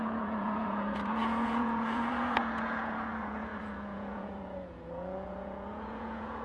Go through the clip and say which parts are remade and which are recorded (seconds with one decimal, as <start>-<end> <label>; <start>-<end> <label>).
0.0-6.4 remade